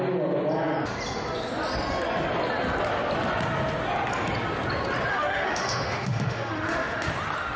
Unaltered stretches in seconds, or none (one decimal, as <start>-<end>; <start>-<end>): 0.0-5.1; 7.1-7.6